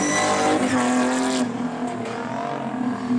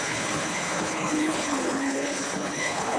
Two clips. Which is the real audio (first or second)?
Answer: first